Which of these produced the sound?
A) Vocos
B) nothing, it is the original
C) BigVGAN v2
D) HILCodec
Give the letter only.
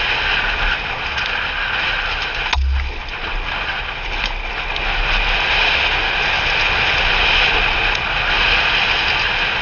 B